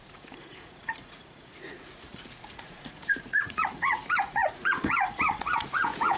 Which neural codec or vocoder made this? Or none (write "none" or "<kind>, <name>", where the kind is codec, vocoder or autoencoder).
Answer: vocoder, Vocos